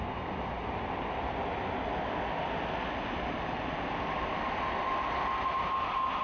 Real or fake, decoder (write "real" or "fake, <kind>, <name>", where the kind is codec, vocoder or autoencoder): real